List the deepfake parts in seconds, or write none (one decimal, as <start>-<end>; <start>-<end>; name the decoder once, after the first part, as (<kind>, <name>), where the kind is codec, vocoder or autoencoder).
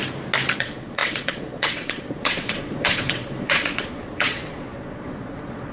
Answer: 0.6-5.7 (vocoder, Vocos)